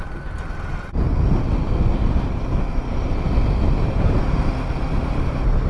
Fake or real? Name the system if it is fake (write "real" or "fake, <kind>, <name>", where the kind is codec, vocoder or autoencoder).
real